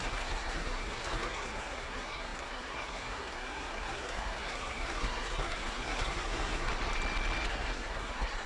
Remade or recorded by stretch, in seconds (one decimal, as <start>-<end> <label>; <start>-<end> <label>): 0.0-6.7 remade; 6.7-7.5 recorded; 7.5-8.5 remade